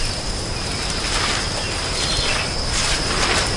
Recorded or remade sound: recorded